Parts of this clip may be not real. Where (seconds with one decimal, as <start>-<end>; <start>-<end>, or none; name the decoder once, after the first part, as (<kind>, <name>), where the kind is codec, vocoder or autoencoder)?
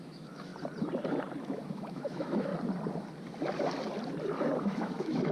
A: 0.0-0.5 (autoencoder, DAC-VAE); 1.4-2.5; 4.6-5.3